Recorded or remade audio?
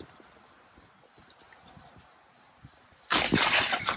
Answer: recorded